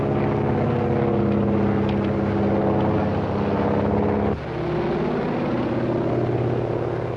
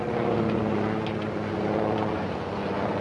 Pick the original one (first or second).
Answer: first